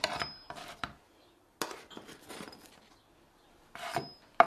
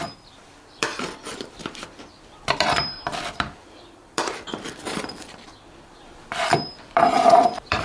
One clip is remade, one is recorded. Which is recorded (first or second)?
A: first